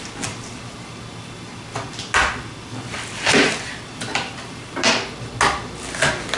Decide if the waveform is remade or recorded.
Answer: recorded